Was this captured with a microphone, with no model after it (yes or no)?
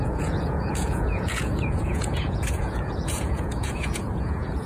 no